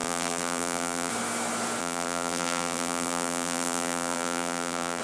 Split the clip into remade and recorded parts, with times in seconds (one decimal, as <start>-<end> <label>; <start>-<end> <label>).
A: 0.0-1.1 remade; 1.1-1.8 recorded; 1.8-5.0 remade

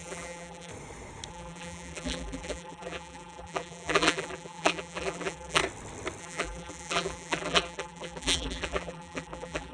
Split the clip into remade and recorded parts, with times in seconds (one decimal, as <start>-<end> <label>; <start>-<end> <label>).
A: 0.0-0.7 remade; 0.7-1.3 recorded; 1.3-5.6 remade; 5.6-6.2 recorded; 6.2-9.7 remade

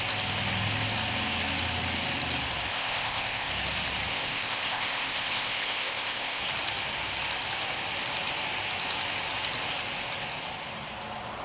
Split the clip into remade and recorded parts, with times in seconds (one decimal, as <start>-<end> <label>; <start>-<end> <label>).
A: 0.0-2.7 recorded; 2.7-3.5 remade; 3.5-4.1 recorded; 4.1-6.4 remade; 6.4-11.4 recorded

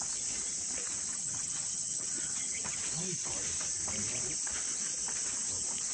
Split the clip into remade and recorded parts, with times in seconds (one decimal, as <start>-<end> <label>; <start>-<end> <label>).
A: 0.0-1.1 recorded; 1.1-2.8 remade; 2.8-5.9 recorded